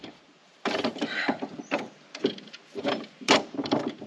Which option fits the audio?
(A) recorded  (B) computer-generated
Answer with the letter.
B